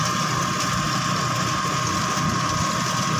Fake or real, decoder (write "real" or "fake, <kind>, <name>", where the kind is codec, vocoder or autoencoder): real